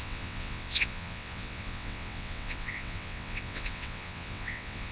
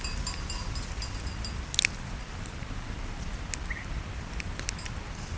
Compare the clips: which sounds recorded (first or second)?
second